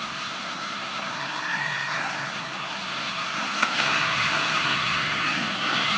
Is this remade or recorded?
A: remade